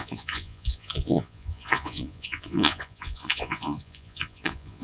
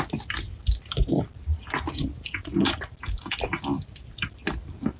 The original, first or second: second